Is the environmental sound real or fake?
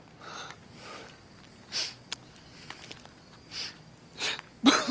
real